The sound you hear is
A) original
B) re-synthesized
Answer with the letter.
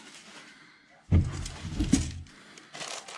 A